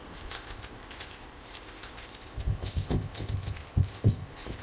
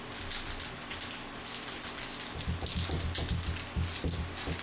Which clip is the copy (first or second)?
first